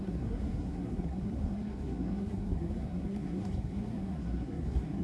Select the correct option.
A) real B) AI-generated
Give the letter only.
B